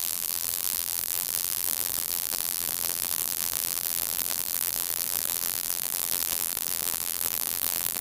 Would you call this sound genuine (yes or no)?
no